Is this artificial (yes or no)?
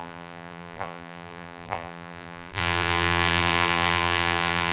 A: yes